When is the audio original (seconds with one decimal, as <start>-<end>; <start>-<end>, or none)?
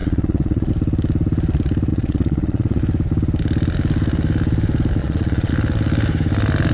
0.7-1.9; 2.8-5.0; 5.5-6.7